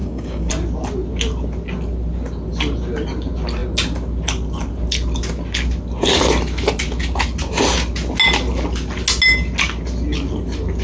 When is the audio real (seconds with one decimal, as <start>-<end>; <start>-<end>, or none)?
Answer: 0.5-10.8